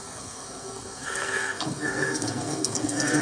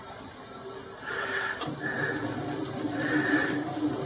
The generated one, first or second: first